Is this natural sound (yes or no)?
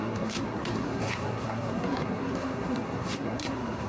no